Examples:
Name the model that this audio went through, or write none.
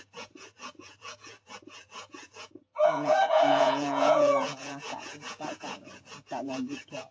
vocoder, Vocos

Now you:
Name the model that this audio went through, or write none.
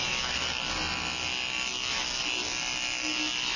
none